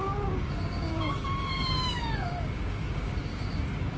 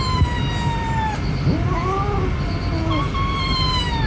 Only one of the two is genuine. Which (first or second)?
second